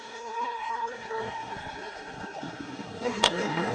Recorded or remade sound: remade